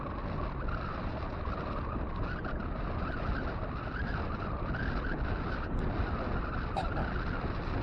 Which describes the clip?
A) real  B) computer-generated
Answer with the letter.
A